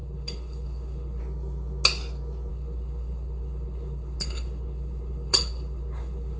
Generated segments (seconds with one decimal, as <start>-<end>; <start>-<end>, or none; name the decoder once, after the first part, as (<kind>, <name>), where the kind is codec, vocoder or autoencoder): 0.0-1.2 (codec, HILCodec); 2.5-6.4